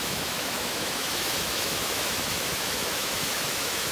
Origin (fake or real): fake